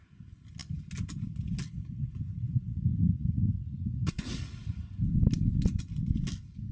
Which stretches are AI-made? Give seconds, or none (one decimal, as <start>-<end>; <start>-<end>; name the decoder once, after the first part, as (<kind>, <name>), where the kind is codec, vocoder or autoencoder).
2.3-4.8 (vocoder, Vocos)

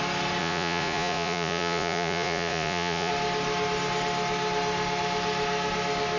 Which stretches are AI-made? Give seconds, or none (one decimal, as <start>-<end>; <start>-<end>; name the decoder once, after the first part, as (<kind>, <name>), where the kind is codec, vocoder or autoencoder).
0.4-3.1 (vocoder, Vocos)